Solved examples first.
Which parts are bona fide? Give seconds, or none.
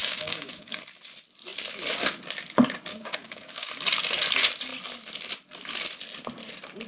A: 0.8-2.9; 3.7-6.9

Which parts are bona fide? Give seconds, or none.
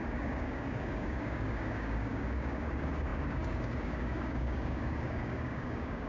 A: none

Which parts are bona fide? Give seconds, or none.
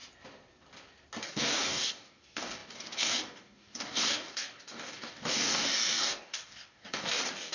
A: 0.0-1.2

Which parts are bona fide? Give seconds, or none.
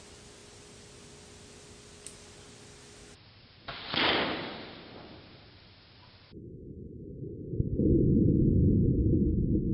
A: 0.0-9.7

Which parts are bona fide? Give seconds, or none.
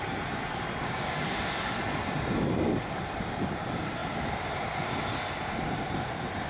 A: 0.0-0.8; 1.7-6.5